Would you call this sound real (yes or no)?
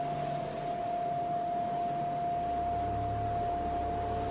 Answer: yes